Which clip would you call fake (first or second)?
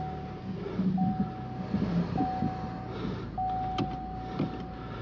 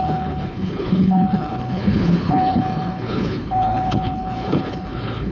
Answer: second